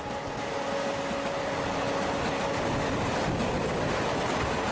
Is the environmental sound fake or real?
real